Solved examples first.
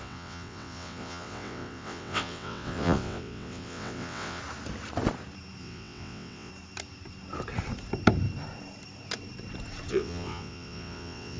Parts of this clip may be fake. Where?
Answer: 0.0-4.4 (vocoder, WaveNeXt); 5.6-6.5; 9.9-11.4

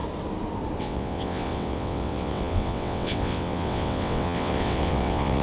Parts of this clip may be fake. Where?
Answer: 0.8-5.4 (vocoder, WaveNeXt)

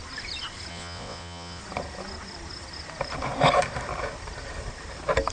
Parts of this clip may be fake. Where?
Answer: 0.7-1.6 (vocoder, WaveNeXt)

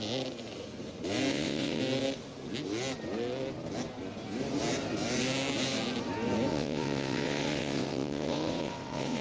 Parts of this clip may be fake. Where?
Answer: 1.3-1.8 (vocoder, WaveNeXt); 6.5-9.2

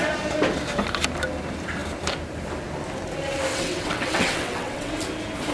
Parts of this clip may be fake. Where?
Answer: 3.5-4.9 (vocoder, WaveNeXt)